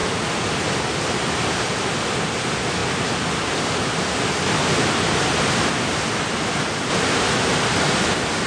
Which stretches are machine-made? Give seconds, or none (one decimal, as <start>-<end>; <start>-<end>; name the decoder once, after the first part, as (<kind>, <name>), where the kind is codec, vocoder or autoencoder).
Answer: none